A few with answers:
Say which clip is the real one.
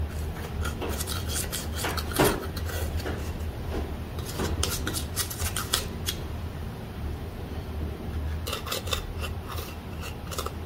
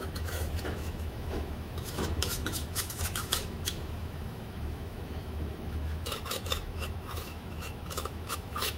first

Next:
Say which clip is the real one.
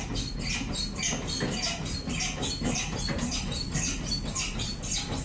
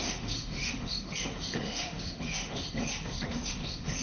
first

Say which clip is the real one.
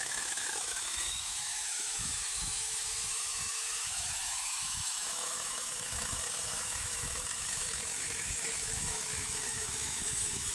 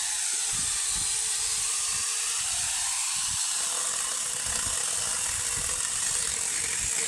second